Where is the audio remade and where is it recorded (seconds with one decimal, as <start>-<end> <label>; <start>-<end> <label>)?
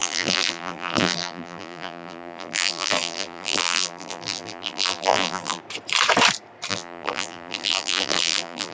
0.0-5.6 remade; 5.6-6.7 recorded; 6.7-8.7 remade